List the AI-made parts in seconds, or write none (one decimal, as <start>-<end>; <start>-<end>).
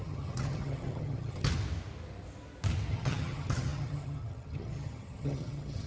0.0-1.5; 2.9-5.9